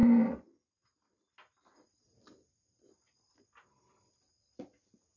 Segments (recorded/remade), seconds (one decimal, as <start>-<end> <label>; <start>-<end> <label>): 0.0-5.2 recorded